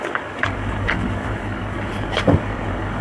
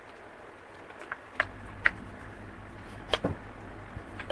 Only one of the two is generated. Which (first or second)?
first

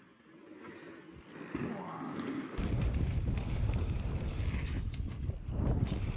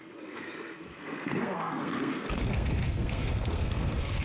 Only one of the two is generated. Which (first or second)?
second